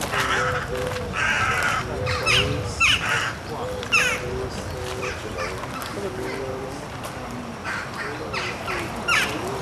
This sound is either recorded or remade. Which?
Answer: recorded